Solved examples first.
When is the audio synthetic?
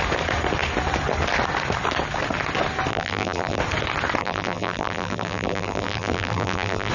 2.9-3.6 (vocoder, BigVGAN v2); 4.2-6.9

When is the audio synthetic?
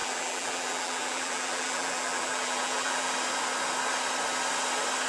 0.0-3.1 (vocoder, BigVGAN v2)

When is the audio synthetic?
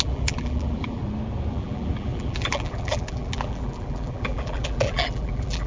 0.0-1.0 (vocoder, BigVGAN v2); 1.5-5.7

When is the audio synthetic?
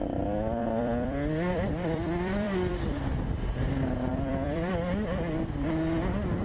0.6-2.9 (vocoder, BigVGAN v2); 4.1-4.7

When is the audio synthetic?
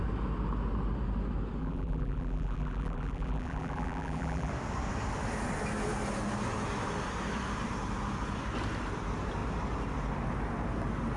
1.6-4.5 (vocoder, BigVGAN v2)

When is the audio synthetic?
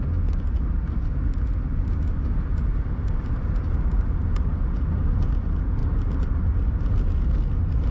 3.0-4.7 (vocoder, BigVGAN v2)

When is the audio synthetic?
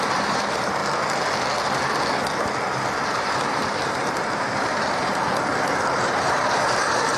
0.0-0.8 (vocoder, BigVGAN v2); 3.1-5.2; 6.0-7.2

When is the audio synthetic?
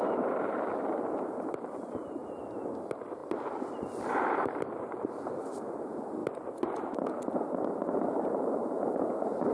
0.0-2.2 (vocoder, BigVGAN v2); 2.8-6.2; 7.7-9.5